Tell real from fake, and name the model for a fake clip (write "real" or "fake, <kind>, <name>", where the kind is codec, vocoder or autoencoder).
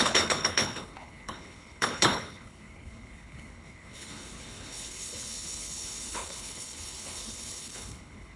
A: fake, codec, HILCodec